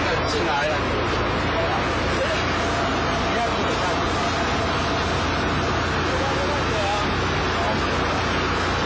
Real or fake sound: real